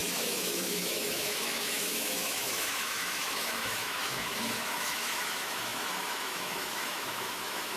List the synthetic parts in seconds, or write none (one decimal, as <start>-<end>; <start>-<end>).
0.0-7.8